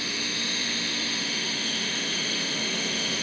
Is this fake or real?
fake